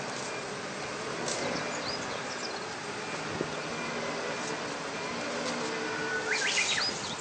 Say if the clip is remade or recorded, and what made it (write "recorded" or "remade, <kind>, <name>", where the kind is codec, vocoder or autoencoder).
recorded